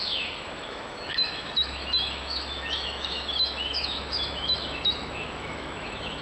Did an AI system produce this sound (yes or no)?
yes